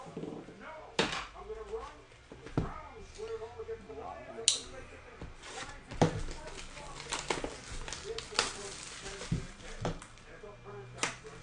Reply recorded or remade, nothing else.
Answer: recorded